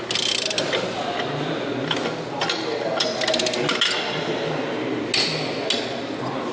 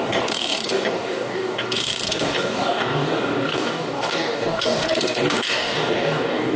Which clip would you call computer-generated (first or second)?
second